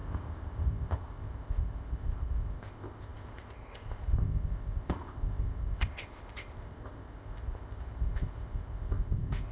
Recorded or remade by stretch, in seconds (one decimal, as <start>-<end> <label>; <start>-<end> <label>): 0.0-9.5 remade